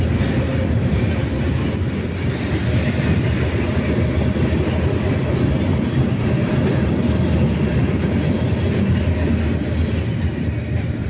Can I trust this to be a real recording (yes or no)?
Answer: yes